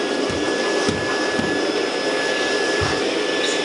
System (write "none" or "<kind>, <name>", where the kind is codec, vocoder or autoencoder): none